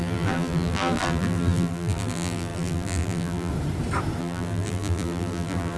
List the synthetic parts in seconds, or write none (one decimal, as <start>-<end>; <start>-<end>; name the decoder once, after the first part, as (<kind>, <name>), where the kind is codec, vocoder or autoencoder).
0.0-3.5 (vocoder, BigVGAN v2); 4.2-5.8